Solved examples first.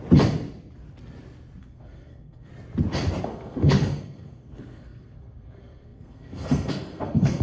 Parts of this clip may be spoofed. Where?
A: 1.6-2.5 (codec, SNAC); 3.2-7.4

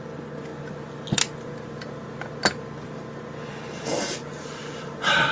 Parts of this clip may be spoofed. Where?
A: 3.9-5.3 (vocoder, BigVGAN v2)

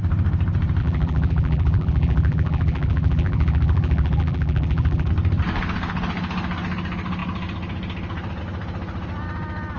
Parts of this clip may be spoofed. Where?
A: 0.8-5.1 (vocoder, BigVGAN v2)

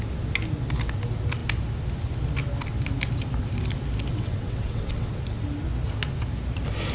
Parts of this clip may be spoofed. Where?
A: 4.1-5.1 (vocoder, WaveNeXt)

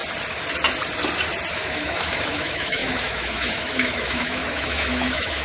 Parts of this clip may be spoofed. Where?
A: 1.5-5.4 (autoencoder, DAC-VAE)

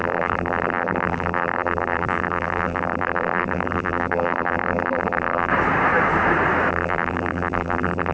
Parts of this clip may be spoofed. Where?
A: 0.0-5.5 (vocoder, BigVGAN v2); 6.7-8.1